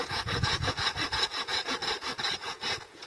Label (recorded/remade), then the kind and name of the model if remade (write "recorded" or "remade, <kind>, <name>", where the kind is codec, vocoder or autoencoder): remade, vocoder, Vocos